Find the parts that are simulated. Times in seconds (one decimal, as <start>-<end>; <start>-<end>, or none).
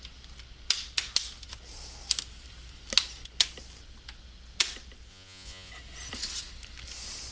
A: 5.1-5.7